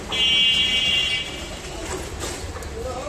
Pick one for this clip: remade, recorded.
recorded